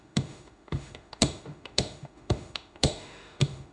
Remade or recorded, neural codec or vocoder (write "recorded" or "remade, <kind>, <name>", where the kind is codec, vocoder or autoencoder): remade, autoencoder, DAC-VAE